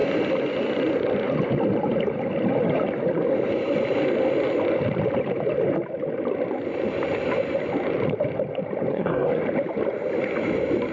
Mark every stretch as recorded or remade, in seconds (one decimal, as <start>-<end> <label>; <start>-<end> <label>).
0.0-8.9 recorded; 8.9-9.4 remade; 9.4-10.9 recorded